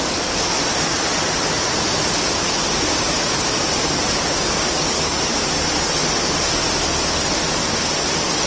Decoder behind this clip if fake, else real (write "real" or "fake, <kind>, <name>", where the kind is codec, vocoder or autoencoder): real